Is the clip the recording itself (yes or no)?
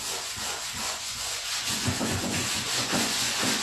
no